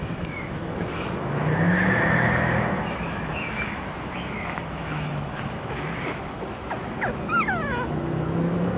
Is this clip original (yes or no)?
no